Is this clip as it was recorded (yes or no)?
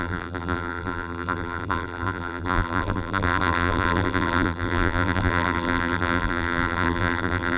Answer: no